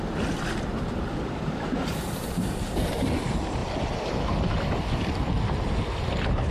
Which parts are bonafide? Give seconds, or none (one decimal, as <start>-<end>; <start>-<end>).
0.0-0.7; 3.0-6.5